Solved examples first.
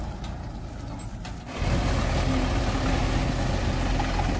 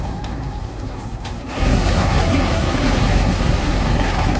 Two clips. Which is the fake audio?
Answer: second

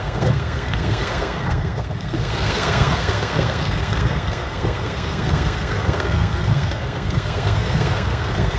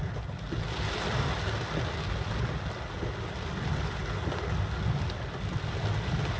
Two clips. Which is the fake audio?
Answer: first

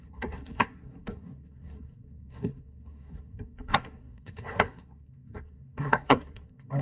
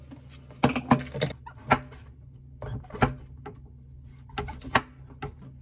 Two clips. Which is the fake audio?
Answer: first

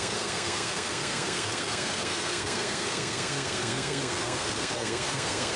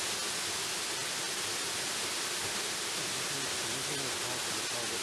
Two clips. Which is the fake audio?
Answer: first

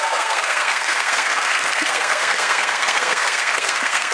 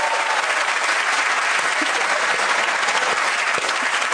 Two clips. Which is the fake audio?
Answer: first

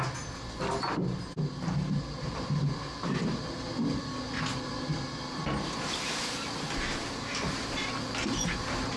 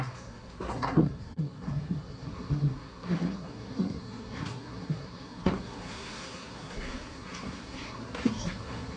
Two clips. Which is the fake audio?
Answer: second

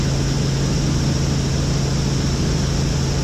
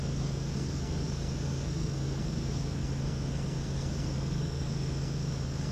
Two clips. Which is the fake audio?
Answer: second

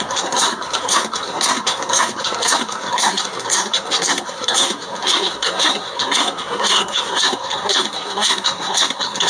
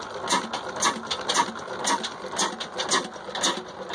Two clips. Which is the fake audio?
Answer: first